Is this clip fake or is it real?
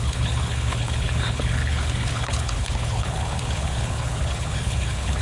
fake